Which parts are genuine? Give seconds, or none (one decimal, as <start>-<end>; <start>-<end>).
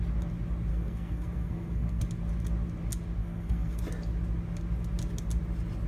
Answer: 0.0-0.7; 2.0-3.2; 3.8-5.9